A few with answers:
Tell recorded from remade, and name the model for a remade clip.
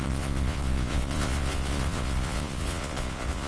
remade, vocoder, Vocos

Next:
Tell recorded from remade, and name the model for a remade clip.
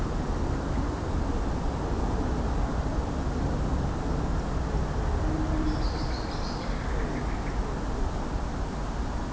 recorded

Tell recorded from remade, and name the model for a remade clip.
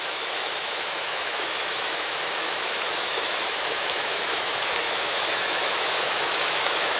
remade, autoencoder, DAC-VAE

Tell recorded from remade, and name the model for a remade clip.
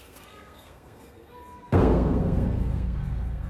remade, codec, SNAC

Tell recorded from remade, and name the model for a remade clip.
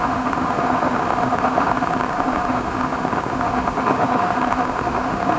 remade, autoencoder, DAC-VAE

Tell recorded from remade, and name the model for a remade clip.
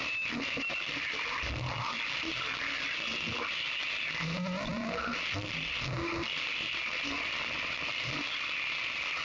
recorded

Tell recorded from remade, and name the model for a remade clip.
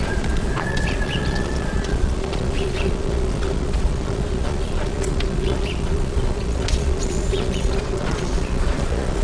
remade, vocoder, Vocos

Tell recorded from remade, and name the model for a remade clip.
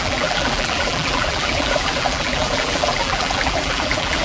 remade, vocoder, BigVGAN v2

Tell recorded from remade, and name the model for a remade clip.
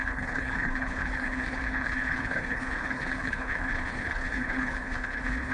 remade, codec, HILCodec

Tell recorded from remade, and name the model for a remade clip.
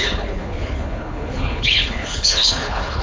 remade, codec, HILCodec